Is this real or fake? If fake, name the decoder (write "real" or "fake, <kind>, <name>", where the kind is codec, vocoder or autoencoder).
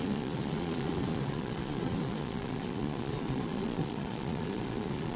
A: fake, vocoder, Vocos